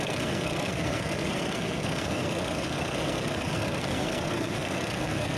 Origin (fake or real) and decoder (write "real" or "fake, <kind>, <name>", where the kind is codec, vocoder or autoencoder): fake, codec, SNAC